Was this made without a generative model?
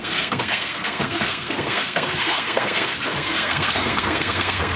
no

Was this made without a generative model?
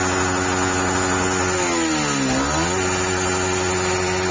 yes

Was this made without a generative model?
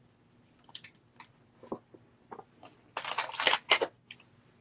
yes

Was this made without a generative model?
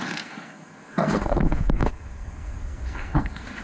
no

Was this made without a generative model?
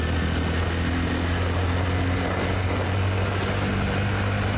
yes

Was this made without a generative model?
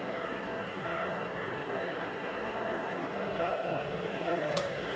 no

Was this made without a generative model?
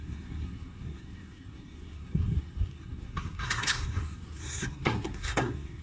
no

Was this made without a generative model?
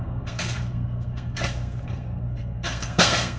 no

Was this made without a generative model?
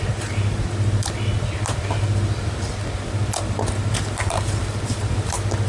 yes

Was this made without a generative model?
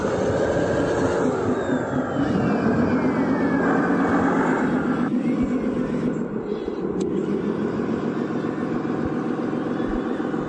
yes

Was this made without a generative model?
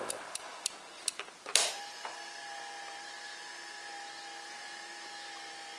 yes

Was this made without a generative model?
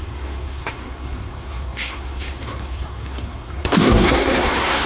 no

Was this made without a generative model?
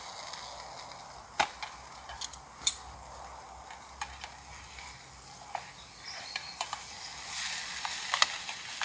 yes